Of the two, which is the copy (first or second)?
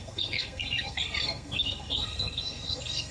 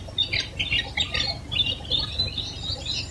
first